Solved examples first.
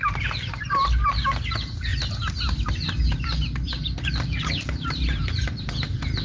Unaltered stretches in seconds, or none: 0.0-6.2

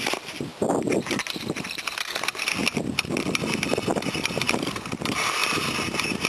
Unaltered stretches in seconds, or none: 0.5-4.3

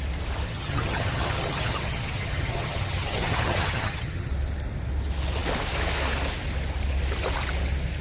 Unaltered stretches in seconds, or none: 0.0-0.5; 4.3-8.0

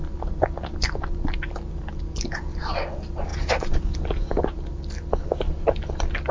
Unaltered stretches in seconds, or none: 0.0-6.3